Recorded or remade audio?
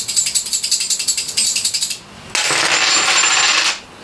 recorded